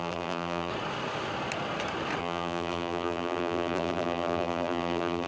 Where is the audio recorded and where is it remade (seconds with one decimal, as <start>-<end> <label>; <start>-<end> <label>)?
0.0-0.7 remade; 0.7-2.2 recorded; 2.2-5.3 remade